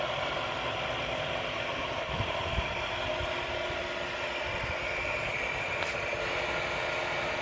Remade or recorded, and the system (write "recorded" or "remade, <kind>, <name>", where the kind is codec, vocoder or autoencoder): recorded